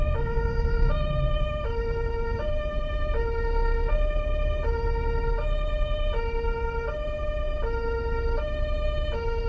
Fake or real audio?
real